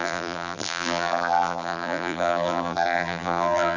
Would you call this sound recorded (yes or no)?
no